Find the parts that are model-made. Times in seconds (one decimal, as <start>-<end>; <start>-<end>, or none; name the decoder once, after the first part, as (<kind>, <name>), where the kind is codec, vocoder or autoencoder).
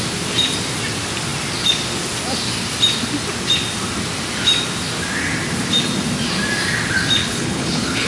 7.2-8.1 (codec, HILCodec)